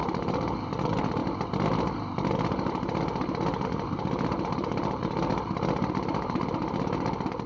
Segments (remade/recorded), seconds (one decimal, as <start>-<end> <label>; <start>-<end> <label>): 0.0-1.2 remade; 1.2-2.7 recorded; 2.7-5.3 remade; 5.3-5.9 recorded; 5.9-7.5 remade